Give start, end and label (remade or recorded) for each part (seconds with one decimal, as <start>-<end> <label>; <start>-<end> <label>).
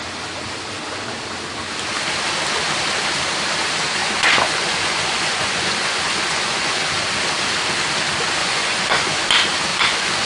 0.0-4.0 recorded; 4.0-6.9 remade; 6.9-8.4 recorded; 8.4-9.2 remade; 9.2-9.7 recorded; 9.7-10.3 remade